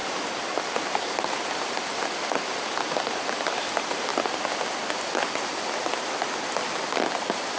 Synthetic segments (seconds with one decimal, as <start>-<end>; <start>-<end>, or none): none